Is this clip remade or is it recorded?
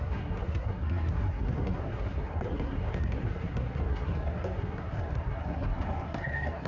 remade